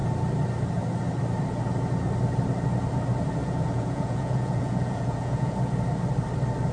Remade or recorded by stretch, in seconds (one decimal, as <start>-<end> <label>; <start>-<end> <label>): 0.0-3.4 recorded; 3.4-5.7 remade; 5.7-6.7 recorded